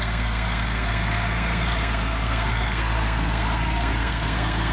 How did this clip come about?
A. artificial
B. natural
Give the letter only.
A